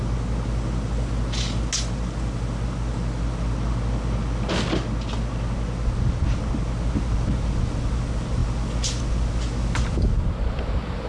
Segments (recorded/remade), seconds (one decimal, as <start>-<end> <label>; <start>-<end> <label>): 0.0-11.1 recorded